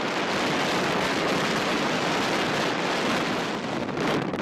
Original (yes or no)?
yes